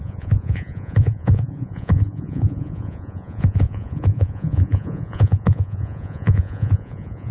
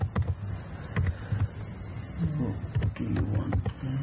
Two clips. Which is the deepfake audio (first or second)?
first